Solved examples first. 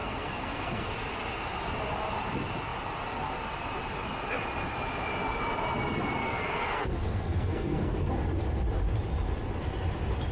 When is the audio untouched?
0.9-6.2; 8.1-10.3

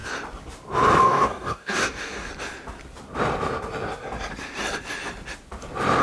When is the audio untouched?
0.0-1.0; 2.3-6.0

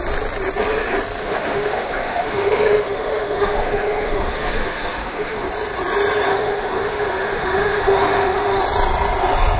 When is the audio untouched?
0.0-1.2; 5.5-6.3; 8.6-9.6

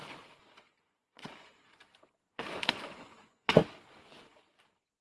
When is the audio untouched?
0.0-0.7; 1.8-2.7; 3.6-5.0